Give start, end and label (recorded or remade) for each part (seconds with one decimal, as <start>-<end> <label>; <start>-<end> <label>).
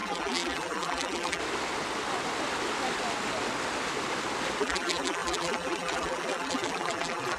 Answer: 0.0-1.4 remade; 1.4-4.6 recorded; 4.6-7.4 remade